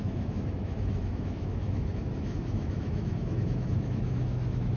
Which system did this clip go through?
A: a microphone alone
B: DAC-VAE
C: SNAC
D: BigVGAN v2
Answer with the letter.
B